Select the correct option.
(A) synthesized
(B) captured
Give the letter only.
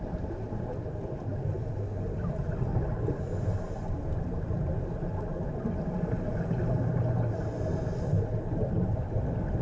B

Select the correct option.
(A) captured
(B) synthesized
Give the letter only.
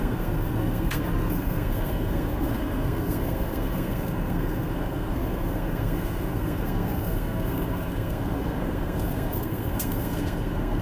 B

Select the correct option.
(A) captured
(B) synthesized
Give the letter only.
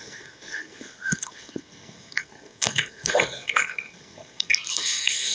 B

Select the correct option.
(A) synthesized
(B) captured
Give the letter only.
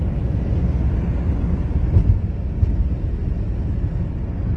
B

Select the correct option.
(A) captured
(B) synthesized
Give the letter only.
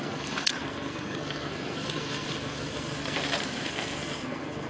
B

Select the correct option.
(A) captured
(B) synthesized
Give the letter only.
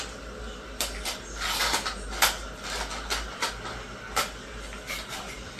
A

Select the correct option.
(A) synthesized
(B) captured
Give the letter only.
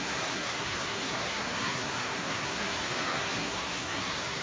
A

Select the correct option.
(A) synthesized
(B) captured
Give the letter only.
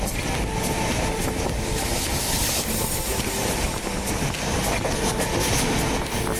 B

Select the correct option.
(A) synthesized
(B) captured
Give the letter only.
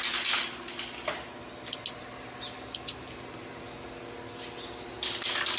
B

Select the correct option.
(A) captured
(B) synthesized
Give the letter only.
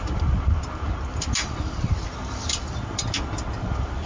A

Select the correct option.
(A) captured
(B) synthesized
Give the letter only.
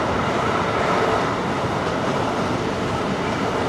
A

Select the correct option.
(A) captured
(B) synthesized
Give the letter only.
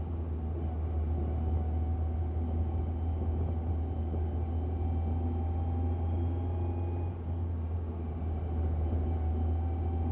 A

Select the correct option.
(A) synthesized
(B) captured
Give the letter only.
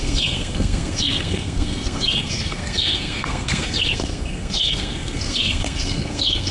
A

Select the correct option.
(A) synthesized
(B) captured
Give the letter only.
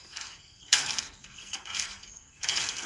A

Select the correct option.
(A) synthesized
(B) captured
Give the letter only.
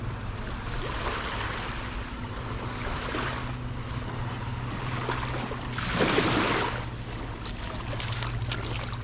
B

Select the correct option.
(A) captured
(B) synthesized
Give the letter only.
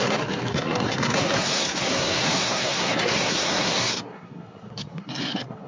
B